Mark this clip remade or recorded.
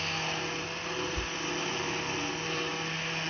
recorded